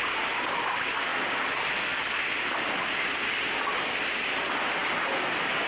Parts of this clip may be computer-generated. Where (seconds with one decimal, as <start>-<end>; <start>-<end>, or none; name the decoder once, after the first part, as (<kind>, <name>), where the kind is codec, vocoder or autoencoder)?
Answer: none